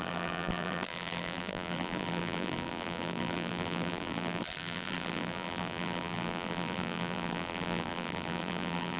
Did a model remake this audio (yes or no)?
yes